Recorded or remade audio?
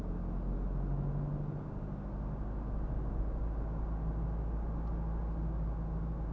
recorded